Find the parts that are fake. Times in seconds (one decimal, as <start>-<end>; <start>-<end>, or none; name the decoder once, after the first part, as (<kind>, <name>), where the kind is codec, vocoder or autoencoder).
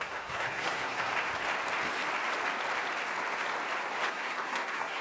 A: 0.0-1.1 (codec, SNAC); 4.1-5.0